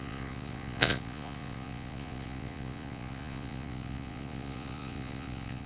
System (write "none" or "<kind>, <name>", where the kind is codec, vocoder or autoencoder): vocoder, Vocos